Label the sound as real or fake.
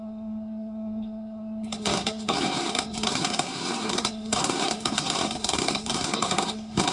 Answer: fake